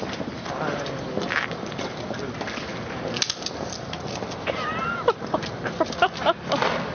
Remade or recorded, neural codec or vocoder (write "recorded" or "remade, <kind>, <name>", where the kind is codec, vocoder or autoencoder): recorded